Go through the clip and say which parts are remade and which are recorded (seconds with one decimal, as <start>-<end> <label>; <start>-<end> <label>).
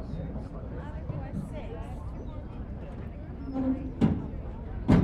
0.0-0.5 recorded; 0.5-3.5 remade; 3.5-5.0 recorded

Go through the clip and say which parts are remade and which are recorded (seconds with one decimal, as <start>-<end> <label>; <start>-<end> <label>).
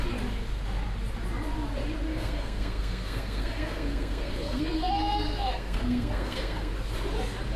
0.0-2.1 recorded; 2.1-6.7 remade; 6.7-7.6 recorded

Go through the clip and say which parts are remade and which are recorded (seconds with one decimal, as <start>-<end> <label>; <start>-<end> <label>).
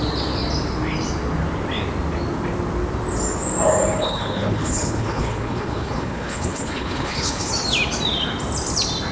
0.0-4.0 recorded; 4.0-7.5 remade; 7.5-9.1 recorded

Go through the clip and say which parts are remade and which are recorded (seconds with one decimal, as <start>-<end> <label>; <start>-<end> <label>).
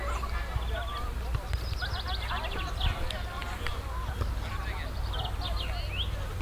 0.0-6.4 recorded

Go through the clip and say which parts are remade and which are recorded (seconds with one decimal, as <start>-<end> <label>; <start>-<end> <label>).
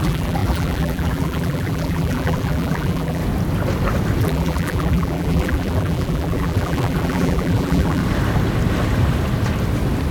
0.0-3.2 remade; 3.2-4.2 recorded; 4.2-8.0 remade; 8.0-10.1 recorded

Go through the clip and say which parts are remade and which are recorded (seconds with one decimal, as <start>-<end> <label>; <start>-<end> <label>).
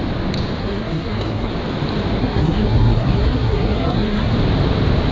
0.0-0.6 recorded; 0.6-1.5 remade; 1.5-2.2 recorded; 2.2-4.3 remade; 4.3-5.1 recorded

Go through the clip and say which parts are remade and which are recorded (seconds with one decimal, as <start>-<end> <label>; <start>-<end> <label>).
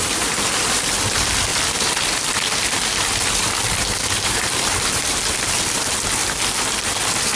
0.0-6.2 remade; 6.2-7.0 recorded; 7.0-7.4 remade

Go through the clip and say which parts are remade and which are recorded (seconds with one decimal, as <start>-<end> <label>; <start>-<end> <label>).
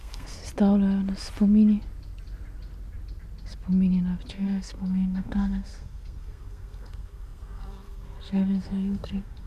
0.0-0.4 remade; 0.4-4.3 recorded; 4.3-9.5 remade